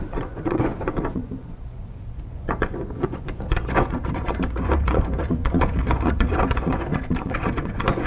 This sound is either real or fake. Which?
fake